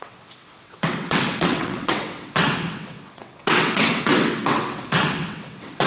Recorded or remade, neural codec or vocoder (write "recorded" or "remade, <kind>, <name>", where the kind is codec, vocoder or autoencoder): remade, vocoder, WaveNeXt